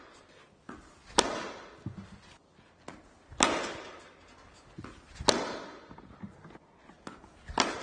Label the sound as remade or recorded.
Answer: recorded